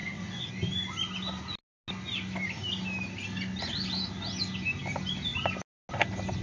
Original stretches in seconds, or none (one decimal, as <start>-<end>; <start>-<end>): 0.5-6.4